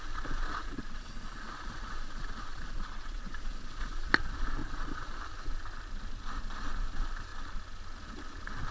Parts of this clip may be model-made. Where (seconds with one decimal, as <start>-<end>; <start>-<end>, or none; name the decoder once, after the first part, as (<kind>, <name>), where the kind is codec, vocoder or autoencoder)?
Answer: 0.0-4.1 (vocoder, Vocos); 4.6-5.2